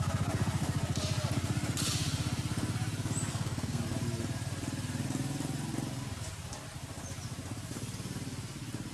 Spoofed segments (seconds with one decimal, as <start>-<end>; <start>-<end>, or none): 3.3-3.8